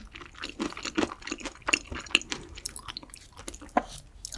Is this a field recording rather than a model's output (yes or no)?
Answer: yes